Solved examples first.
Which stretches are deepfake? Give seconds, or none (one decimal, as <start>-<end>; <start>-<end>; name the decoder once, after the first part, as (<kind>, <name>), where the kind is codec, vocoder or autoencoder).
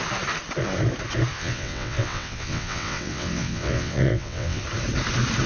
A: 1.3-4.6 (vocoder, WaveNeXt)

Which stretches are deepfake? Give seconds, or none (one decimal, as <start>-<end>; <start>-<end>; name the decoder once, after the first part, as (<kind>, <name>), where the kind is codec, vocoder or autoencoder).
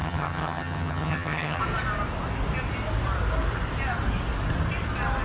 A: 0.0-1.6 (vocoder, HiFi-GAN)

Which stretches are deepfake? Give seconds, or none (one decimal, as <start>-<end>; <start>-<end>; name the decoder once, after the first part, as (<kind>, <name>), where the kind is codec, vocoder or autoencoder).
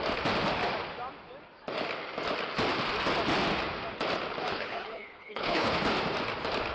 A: 4.5-5.8 (codec, HILCodec)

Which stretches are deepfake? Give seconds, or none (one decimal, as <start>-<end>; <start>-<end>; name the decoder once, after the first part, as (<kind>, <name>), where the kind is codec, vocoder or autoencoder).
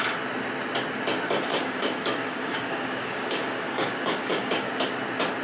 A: 1.5-4.7 (codec, DAC)